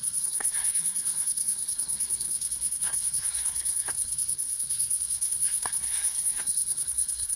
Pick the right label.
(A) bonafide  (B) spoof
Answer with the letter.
B